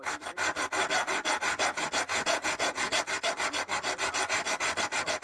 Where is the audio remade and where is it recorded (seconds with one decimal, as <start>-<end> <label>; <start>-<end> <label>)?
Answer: 0.0-2.1 recorded; 2.1-3.0 remade; 3.0-5.2 recorded

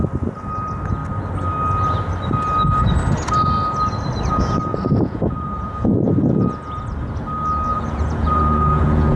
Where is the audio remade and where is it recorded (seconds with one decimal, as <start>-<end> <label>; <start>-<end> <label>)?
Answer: 0.0-4.7 recorded; 4.7-6.8 remade; 6.8-7.7 recorded; 7.7-9.2 remade

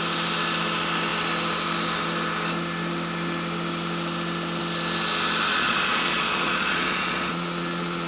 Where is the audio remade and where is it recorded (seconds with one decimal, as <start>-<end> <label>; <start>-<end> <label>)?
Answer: 0.0-5.5 recorded; 5.5-8.1 remade

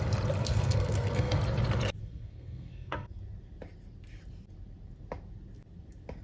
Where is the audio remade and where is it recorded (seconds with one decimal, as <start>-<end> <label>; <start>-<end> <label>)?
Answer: 0.0-0.4 recorded; 0.4-1.4 remade; 1.4-2.0 recorded; 2.0-3.2 remade; 3.2-6.2 recorded